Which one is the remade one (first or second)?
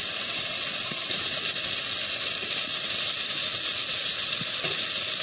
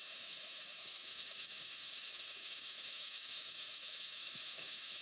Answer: second